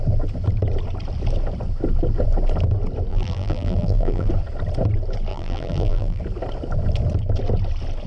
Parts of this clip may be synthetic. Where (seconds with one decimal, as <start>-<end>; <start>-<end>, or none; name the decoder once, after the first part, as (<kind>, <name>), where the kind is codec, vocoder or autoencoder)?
3.1-4.3 (vocoder, BigVGAN v2); 5.3-6.2